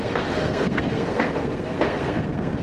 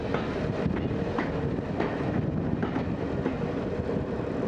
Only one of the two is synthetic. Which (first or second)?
first